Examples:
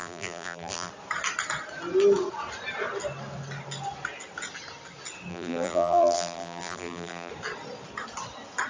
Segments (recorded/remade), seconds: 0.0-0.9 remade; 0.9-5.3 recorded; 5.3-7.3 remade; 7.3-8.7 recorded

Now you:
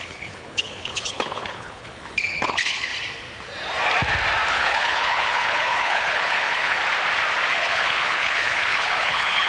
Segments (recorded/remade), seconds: 0.0-2.9 remade; 2.9-4.5 recorded; 4.5-6.8 remade; 6.8-7.5 recorded; 7.5-9.5 remade

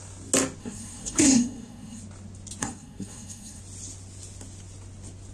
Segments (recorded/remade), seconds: 0.0-0.6 recorded; 0.6-2.0 remade; 2.0-2.6 recorded; 2.6-3.6 remade; 3.6-5.3 recorded

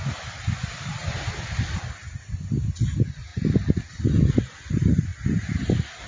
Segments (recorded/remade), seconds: 0.0-6.1 recorded

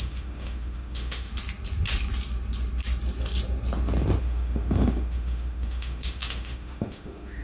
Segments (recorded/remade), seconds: 0.0-1.3 remade; 1.3-4.2 recorded; 4.2-7.4 remade

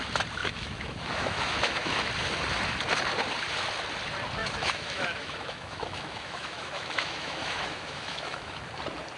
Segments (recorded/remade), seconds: 0.0-0.4 recorded; 0.4-2.1 remade; 2.1-4.4 recorded; 4.4-8.6 remade; 8.6-9.2 recorded